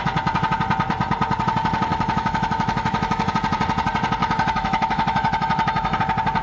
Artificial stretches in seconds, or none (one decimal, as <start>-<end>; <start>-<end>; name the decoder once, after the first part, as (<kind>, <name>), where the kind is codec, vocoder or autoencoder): 1.9-3.3 (autoencoder, DAC-VAE); 4.2-6.0